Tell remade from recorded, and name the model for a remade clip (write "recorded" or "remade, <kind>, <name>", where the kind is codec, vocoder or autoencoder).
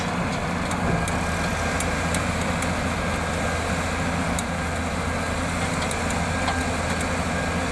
recorded